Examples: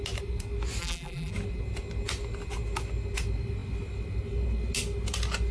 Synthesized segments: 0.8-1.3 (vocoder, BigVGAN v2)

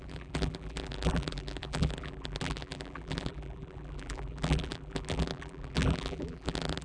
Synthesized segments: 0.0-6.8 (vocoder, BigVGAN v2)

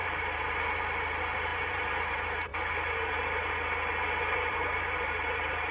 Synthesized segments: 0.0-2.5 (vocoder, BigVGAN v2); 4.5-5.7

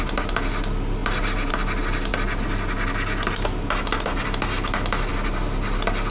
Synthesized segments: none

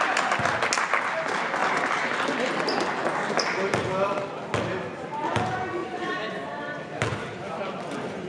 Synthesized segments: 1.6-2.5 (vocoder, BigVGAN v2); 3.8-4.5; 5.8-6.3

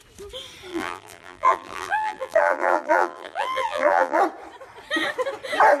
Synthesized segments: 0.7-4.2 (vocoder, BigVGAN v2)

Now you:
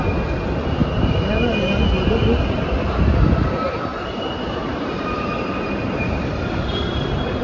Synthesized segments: 0.8-1.5 (vocoder, BigVGAN v2); 3.9-7.4

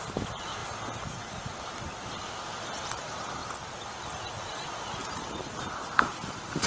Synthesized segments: 0.0-0.6 (vocoder, BigVGAN v2); 2.2-3.4; 4.2-6.7